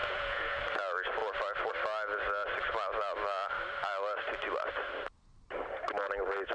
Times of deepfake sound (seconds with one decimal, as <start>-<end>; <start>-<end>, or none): 0.0-0.6